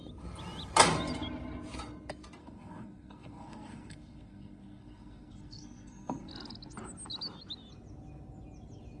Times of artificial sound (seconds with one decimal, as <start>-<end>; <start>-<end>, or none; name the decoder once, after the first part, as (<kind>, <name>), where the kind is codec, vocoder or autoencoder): 2.4-6.3 (codec, SNAC)